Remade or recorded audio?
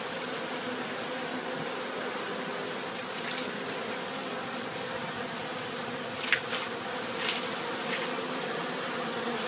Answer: recorded